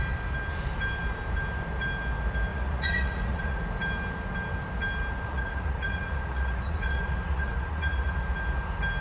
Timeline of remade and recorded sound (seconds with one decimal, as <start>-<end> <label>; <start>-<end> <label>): 0.0-2.5 recorded; 2.5-3.6 remade; 3.6-5.3 recorded; 5.3-8.2 remade; 8.2-9.0 recorded